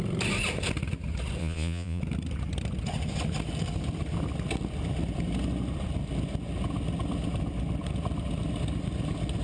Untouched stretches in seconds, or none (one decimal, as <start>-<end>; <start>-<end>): 0.0-1.4; 2.0-9.4